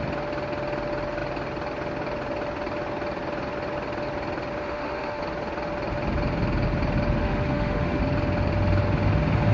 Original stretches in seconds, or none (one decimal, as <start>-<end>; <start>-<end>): 0.0-4.6; 5.2-7.2; 8.0-9.5